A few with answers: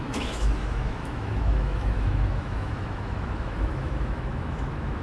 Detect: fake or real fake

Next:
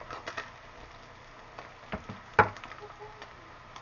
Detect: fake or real real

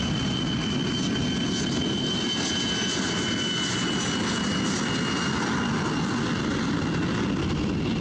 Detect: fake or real real